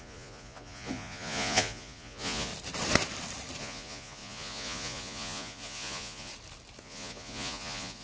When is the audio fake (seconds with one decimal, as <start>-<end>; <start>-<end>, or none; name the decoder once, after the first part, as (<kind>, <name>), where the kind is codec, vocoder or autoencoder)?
0.0-2.5 (vocoder, Vocos); 3.6-6.3; 6.8-8.0